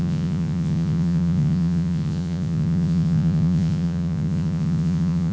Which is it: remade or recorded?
remade